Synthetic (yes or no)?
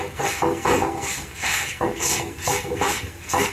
yes